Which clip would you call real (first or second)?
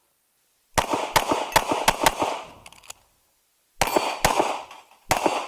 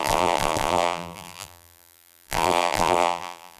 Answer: first